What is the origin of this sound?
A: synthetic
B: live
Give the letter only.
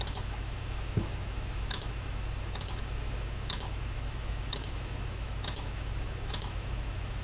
A